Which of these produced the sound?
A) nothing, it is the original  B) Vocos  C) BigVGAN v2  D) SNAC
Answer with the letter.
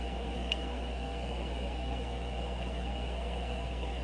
D